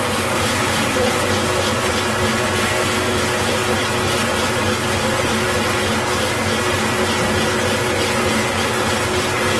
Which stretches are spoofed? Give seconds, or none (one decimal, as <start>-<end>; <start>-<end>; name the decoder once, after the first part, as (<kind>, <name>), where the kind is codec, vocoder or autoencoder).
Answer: 2.6-3.2 (codec, SNAC)

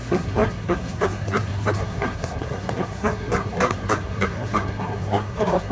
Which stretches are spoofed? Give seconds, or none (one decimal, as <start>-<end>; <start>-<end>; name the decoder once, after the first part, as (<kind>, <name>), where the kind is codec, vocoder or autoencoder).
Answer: 0.0-5.7 (codec, SNAC)

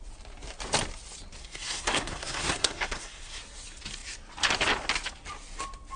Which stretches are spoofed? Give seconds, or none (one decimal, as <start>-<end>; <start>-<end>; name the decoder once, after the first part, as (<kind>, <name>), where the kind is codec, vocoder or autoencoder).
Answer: 1.4-3.4 (codec, SNAC)